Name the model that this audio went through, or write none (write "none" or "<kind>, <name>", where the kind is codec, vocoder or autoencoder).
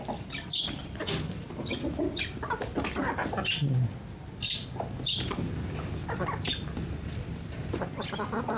none